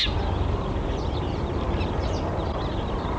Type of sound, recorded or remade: recorded